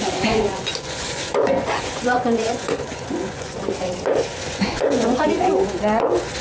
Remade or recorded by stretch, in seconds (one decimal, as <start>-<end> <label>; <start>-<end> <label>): 0.0-6.4 remade